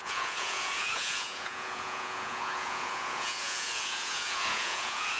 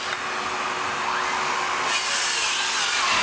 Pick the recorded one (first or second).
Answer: second